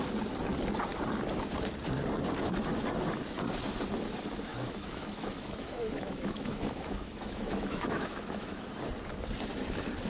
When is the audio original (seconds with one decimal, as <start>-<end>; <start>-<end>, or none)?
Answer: 0.0-4.5; 8.7-10.1